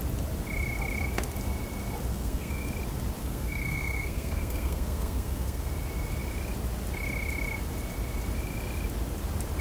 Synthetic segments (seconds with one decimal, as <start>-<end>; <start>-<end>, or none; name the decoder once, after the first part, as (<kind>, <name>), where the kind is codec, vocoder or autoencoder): 2.1-2.7 (codec, SNAC); 3.2-5.7